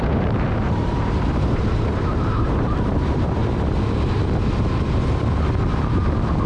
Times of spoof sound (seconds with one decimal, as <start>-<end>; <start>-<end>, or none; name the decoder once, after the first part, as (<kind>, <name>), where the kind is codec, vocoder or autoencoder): 0.0-3.4 (vocoder, BigVGAN v2)